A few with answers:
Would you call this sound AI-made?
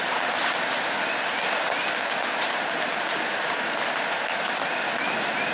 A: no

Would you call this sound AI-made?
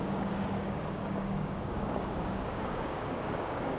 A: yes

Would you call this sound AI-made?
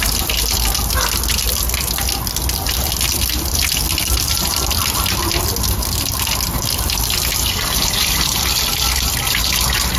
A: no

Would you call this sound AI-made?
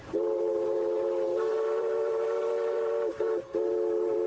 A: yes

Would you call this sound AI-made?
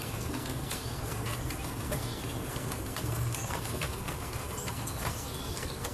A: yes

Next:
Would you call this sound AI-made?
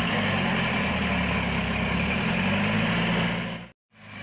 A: no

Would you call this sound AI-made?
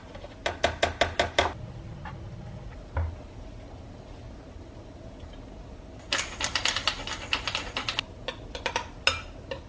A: no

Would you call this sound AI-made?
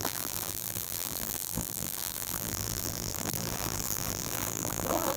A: yes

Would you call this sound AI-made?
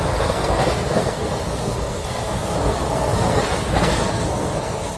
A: yes